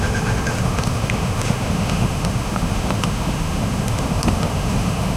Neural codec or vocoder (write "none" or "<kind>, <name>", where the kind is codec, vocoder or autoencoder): autoencoder, DAC-VAE